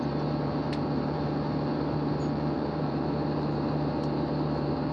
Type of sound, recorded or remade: remade